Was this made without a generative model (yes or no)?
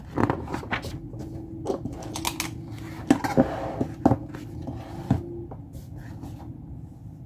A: yes